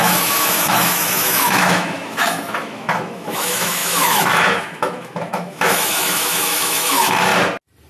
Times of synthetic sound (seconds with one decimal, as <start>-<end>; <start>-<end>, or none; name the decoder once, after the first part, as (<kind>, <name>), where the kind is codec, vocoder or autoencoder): 0.0-7.3 (autoencoder, DAC-VAE)